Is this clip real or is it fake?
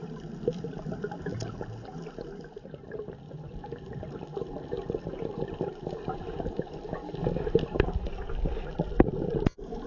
real